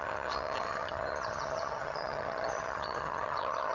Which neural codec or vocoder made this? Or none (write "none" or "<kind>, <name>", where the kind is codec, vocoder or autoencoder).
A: vocoder, HiFi-GAN